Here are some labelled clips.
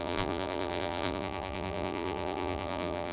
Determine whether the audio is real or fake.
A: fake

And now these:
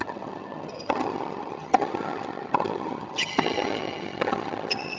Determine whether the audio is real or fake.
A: fake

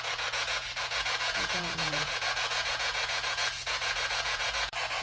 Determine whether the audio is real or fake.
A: fake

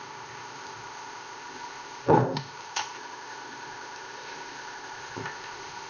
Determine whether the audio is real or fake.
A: fake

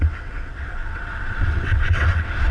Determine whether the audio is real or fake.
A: fake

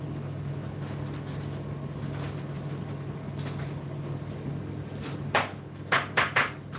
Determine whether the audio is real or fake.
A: real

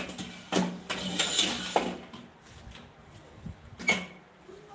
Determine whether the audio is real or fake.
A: real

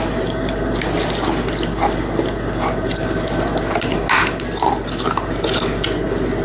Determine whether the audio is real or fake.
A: real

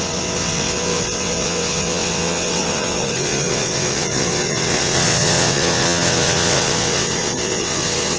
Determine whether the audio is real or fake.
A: fake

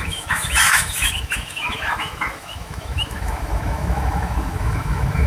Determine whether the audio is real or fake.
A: fake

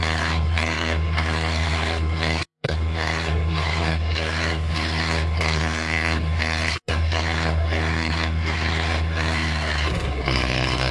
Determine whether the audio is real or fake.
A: fake